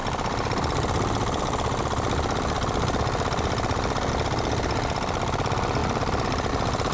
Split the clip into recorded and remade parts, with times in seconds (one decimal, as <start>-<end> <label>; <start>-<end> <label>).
0.0-6.9 recorded